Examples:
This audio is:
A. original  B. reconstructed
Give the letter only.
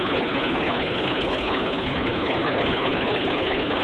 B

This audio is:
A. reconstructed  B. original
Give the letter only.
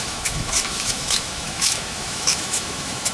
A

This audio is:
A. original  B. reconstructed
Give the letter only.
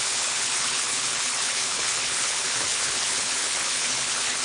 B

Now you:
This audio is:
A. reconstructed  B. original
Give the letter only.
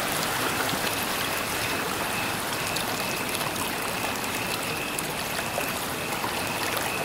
B